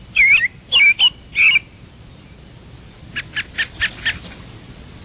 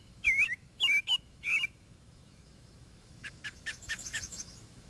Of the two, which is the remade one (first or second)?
second